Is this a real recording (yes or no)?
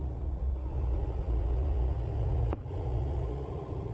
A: no